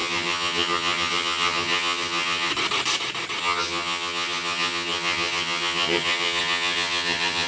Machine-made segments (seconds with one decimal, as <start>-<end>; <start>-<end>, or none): 0.0-2.5; 3.4-7.5